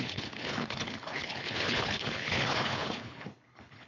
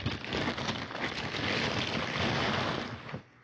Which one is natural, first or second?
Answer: second